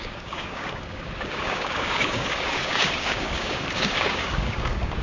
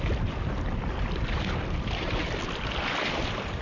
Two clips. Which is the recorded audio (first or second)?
second